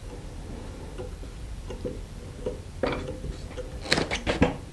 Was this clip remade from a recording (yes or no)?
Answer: no